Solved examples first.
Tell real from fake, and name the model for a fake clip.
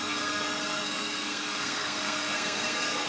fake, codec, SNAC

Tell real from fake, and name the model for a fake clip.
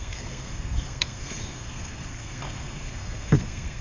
fake, codec, SNAC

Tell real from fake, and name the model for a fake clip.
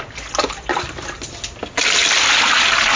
real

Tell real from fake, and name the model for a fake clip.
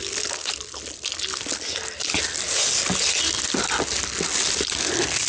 real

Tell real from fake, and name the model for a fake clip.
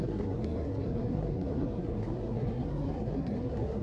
fake, codec, SNAC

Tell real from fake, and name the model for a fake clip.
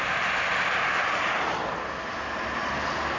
real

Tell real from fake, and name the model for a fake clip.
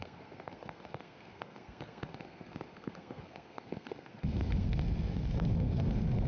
fake, codec, SNAC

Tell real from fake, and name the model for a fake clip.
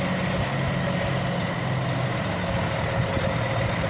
real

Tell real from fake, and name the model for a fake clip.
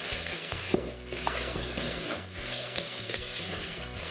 fake, codec, SNAC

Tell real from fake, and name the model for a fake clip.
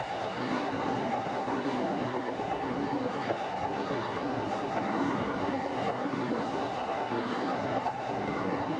fake, codec, SNAC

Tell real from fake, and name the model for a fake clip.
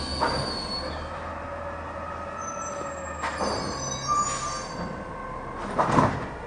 real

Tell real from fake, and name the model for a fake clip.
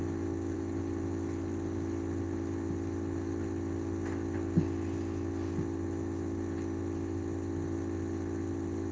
real